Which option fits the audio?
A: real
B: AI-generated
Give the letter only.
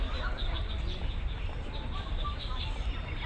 A